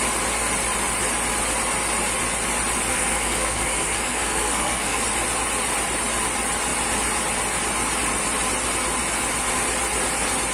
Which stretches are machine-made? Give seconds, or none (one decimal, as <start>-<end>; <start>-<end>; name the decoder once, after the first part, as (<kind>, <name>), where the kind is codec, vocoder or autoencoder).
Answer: 2.9-5.0 (codec, SNAC)